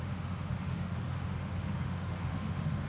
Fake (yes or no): yes